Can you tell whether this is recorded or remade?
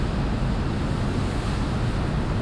recorded